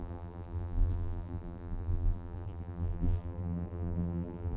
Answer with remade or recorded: remade